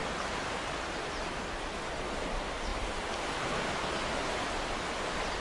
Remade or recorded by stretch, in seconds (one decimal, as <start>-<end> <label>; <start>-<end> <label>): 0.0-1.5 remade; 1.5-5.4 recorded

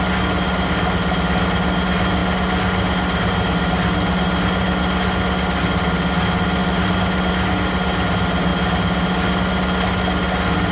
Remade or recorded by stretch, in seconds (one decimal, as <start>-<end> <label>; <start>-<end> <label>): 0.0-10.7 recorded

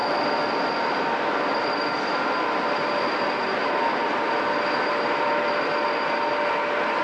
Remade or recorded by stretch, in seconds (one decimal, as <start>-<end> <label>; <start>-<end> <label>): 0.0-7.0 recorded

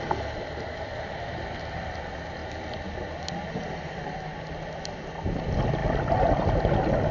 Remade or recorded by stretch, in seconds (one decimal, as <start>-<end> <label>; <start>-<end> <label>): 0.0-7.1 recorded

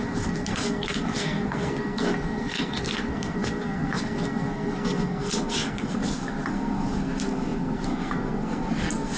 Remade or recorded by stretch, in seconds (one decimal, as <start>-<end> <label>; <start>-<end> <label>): 0.0-9.2 remade

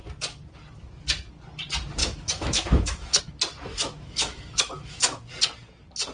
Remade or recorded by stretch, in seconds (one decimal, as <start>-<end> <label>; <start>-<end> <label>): 0.0-2.0 recorded; 2.0-3.2 remade; 3.2-3.7 recorded; 3.7-5.3 remade; 5.3-6.1 recorded

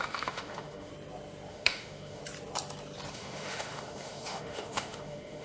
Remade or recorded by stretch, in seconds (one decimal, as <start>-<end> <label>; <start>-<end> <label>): 0.0-0.9 remade; 0.9-1.5 recorded; 1.5-2.2 remade; 2.2-3.1 recorded; 3.1-5.4 remade